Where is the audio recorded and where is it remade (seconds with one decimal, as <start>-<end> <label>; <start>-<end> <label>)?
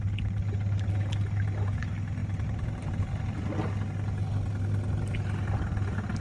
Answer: 0.0-2.2 recorded; 2.2-2.9 remade; 2.9-6.2 recorded